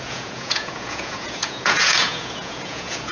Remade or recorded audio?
remade